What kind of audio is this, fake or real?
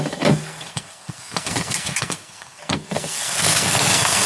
fake